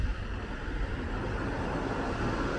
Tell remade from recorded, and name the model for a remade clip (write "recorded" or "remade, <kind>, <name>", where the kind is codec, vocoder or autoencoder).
recorded